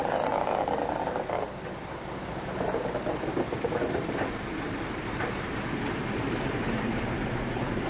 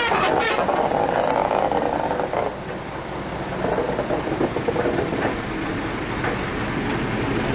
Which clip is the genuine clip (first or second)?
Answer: second